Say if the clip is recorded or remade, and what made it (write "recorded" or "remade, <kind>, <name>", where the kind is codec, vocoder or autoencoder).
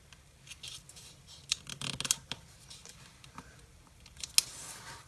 recorded